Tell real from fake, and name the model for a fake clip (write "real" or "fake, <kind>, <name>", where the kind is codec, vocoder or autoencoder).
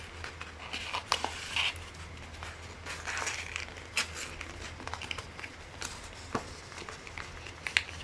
real